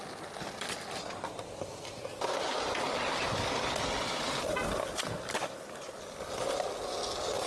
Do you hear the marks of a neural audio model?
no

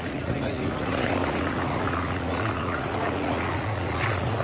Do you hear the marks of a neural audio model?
yes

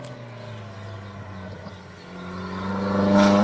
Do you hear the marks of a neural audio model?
no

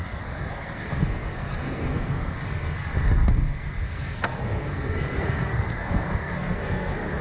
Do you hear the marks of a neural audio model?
yes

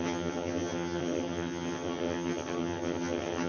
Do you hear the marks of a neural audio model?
yes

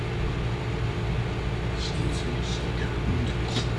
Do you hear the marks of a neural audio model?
no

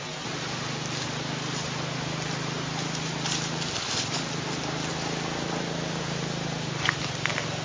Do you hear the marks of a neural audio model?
no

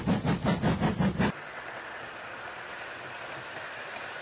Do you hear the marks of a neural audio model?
no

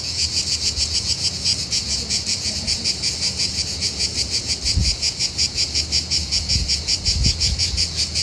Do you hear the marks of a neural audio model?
yes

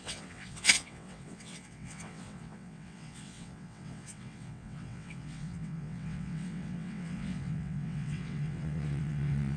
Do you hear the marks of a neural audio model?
yes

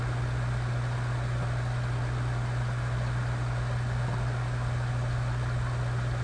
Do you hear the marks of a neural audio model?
no